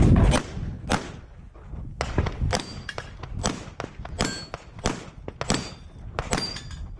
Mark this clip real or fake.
real